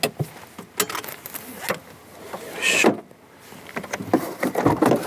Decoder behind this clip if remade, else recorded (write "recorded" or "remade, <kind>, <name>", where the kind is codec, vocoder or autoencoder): recorded